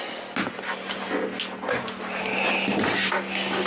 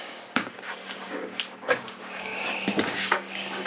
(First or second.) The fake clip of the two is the second